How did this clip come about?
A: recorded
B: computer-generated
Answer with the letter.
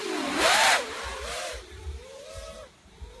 B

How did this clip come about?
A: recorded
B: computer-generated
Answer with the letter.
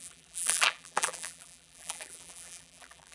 B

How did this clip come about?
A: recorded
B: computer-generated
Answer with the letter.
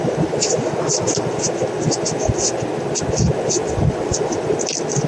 A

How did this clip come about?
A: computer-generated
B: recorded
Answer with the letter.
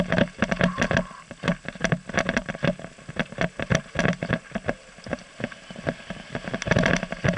B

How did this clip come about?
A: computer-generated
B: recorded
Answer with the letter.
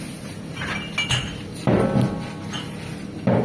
B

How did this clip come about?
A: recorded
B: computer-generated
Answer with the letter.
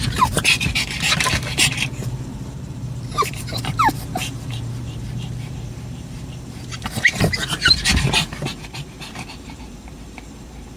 B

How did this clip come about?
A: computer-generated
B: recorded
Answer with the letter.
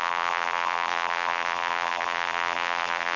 A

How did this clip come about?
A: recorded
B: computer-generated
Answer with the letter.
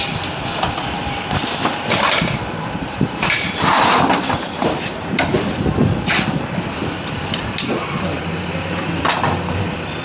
B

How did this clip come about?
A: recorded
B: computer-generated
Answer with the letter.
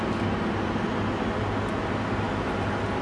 A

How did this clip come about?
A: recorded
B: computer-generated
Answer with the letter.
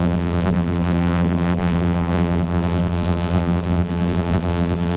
B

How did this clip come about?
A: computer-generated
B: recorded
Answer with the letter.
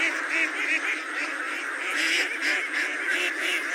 B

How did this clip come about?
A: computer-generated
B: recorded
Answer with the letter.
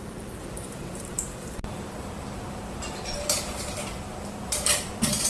A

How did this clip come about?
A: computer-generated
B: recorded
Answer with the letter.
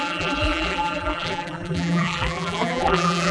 A